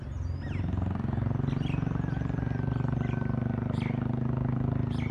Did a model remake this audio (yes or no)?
no